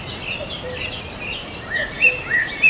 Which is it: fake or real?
real